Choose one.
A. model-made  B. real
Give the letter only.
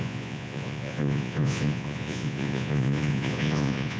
A